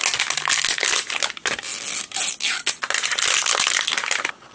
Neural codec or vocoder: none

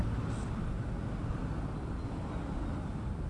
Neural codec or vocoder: none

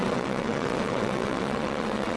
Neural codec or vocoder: vocoder, WaveNeXt